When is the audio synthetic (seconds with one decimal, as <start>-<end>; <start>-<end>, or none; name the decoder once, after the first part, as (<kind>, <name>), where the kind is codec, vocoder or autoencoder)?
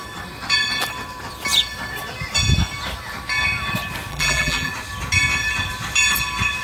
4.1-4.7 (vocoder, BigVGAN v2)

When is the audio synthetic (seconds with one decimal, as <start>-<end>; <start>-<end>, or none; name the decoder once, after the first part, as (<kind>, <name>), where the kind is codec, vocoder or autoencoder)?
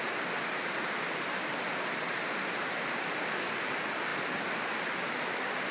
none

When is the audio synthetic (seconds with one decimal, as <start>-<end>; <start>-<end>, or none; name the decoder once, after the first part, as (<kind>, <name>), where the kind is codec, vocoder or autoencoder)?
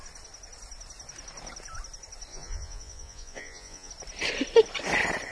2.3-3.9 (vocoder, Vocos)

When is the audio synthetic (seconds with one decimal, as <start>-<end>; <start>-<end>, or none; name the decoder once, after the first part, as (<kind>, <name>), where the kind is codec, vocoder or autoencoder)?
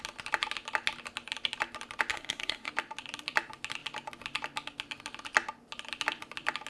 2.1-2.7 (codec, SNAC)